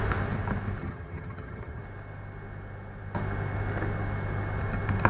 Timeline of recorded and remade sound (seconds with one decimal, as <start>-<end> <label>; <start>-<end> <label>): 0.0-0.8 recorded; 0.8-1.8 remade; 1.8-5.1 recorded